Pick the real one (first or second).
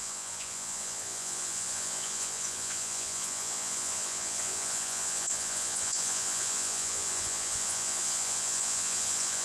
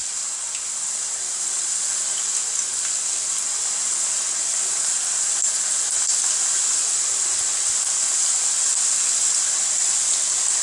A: second